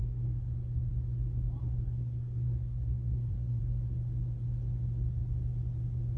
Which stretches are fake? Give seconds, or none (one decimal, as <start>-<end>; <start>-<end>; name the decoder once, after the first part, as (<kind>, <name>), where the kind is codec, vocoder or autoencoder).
0.0-0.9 (codec, SNAC); 1.6-3.6

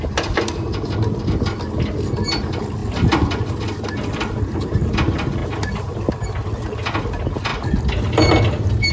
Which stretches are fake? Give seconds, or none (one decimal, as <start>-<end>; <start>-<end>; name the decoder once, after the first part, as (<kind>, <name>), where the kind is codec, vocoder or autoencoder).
none

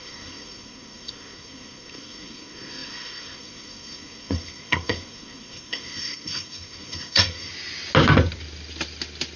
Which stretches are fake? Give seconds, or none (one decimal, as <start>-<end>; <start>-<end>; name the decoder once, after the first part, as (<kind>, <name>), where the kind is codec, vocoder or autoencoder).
0.0-7.5 (codec, SNAC)